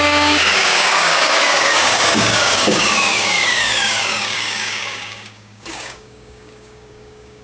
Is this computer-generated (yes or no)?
yes